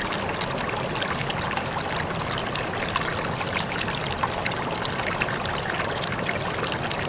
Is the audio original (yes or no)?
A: yes